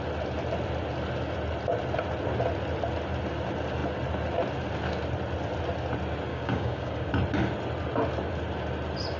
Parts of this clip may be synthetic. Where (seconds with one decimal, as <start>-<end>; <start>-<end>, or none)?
6.3-7.1